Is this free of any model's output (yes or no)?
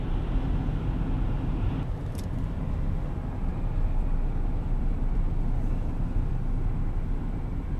yes